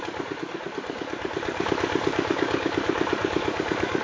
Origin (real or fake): fake